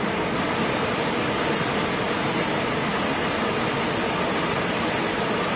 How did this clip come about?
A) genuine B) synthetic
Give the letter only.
A